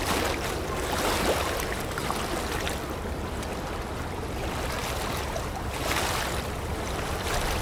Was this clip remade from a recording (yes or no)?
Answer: no